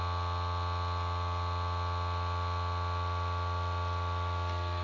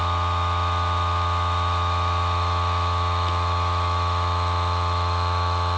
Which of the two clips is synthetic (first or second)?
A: second